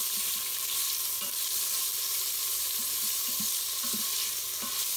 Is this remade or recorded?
remade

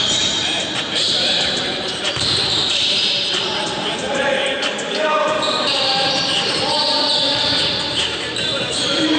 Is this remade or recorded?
remade